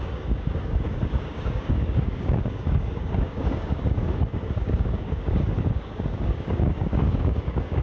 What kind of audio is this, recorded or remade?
remade